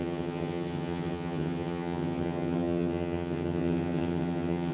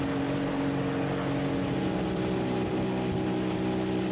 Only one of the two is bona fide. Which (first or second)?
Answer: second